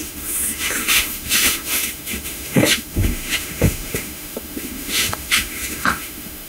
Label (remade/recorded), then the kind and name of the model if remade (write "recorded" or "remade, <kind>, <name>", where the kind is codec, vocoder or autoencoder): remade, autoencoder, DAC-VAE